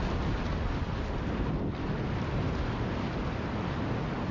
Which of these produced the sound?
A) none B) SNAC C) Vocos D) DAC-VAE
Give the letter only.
A